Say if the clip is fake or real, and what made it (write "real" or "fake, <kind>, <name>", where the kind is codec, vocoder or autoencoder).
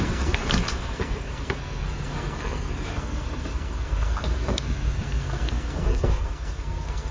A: fake, codec, SNAC